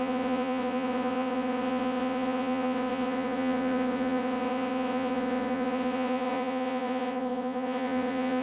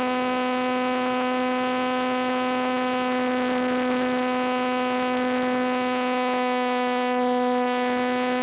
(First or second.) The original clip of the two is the second